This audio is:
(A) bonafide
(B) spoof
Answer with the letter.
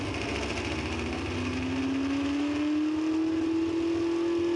A